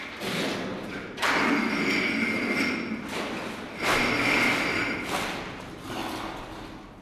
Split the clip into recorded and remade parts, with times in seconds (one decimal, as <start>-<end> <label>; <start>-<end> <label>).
0.0-0.7 recorded; 0.7-1.5 remade; 1.5-7.0 recorded